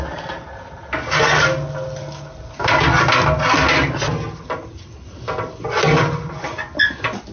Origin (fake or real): real